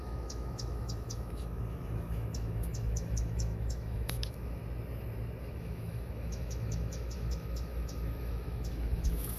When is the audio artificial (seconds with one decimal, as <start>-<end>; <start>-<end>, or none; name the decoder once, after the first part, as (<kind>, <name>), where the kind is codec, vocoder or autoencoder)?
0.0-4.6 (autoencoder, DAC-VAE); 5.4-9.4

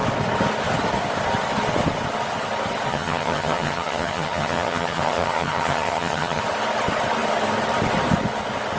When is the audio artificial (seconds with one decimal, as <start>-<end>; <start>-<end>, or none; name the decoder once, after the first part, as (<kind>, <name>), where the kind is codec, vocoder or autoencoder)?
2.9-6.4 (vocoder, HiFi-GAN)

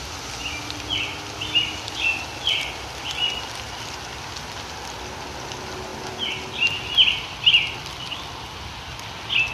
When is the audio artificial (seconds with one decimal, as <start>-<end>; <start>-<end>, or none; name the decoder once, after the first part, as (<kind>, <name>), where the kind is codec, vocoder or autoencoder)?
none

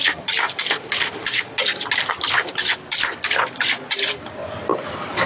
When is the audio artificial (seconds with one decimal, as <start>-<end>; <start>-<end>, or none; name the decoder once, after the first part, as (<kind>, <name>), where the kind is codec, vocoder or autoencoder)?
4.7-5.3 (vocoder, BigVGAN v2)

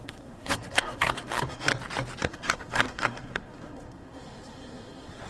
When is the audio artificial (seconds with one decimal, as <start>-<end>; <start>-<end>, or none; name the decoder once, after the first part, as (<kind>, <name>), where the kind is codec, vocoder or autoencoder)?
0.0-1.7 (codec, SNAC); 2.2-5.3

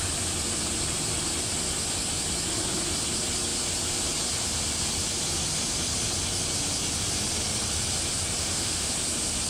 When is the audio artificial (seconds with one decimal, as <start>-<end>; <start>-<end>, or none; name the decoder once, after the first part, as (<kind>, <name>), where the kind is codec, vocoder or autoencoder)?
8.4-8.9 (autoencoder, DAC-VAE)

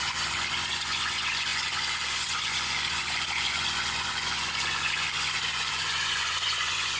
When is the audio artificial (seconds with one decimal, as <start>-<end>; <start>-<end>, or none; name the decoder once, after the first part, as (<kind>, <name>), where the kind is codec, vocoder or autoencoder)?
0.0-7.0 (vocoder, Vocos)

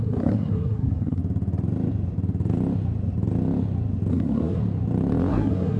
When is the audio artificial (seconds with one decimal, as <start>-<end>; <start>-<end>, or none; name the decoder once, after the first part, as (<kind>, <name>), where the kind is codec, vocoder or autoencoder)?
0.0-1.2 (codec, SNAC); 4.1-4.6; 5.3-5.8